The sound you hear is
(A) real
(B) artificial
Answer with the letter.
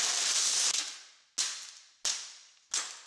A